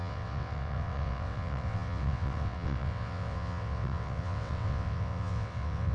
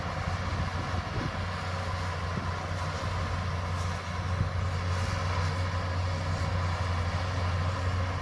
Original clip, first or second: second